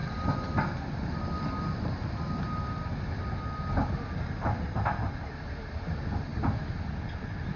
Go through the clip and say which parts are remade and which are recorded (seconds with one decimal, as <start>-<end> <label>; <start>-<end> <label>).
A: 0.0-7.6 recorded